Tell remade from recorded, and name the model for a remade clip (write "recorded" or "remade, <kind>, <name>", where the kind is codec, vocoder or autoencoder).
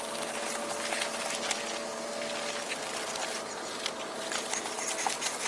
recorded